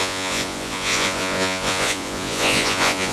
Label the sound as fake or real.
fake